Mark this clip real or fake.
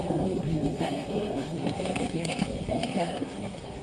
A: fake